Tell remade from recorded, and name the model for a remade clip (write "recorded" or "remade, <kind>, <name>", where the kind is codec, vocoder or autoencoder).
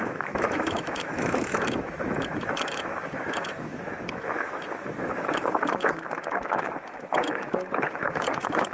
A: remade, autoencoder, DAC-VAE